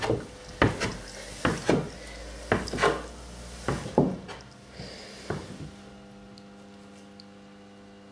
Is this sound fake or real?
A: real